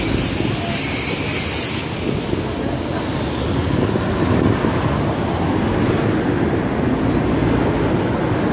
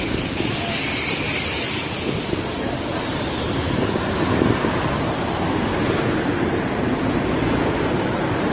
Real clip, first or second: first